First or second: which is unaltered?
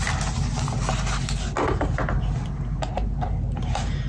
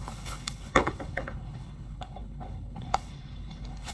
first